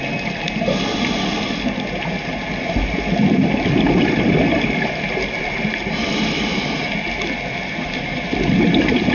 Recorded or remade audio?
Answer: recorded